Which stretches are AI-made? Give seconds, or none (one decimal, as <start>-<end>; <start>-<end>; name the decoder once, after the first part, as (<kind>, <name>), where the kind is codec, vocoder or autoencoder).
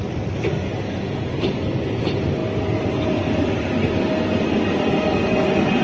none